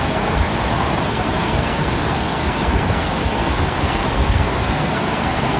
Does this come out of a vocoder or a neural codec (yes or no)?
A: yes